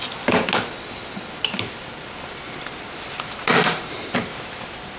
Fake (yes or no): no